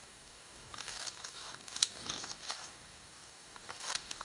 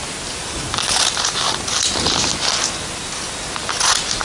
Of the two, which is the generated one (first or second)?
first